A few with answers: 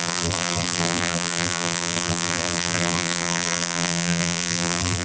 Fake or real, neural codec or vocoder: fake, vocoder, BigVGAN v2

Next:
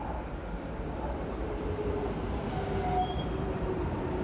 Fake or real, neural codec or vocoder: fake, vocoder, BigVGAN v2